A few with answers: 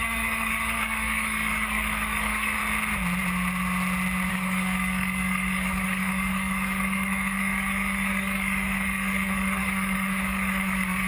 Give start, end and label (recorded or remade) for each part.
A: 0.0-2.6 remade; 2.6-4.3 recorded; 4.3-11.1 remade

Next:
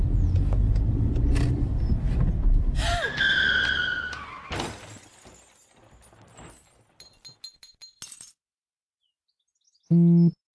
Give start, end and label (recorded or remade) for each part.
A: 0.0-10.5 recorded

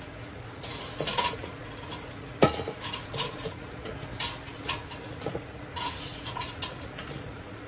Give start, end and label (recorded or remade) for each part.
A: 0.0-3.9 remade; 3.9-4.5 recorded; 4.5-7.7 remade

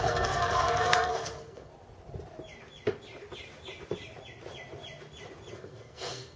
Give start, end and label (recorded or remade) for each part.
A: 0.0-1.7 remade; 1.7-5.5 recorded; 5.5-6.4 remade

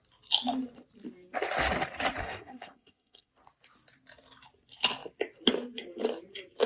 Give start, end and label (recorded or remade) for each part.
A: 0.0-2.2 recorded; 2.2-3.3 remade; 3.3-6.7 recorded

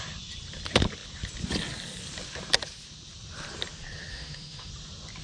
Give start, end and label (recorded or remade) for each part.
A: 0.0-4.1 recorded; 4.1-4.7 remade; 4.7-5.2 recorded

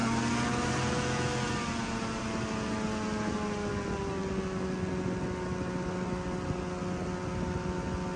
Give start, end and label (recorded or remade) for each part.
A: 0.0-8.2 recorded

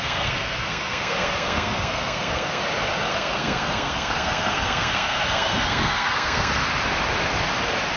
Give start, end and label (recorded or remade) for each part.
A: 0.0-2.6 remade; 2.6-3.1 recorded; 3.1-6.6 remade; 6.6-8.0 recorded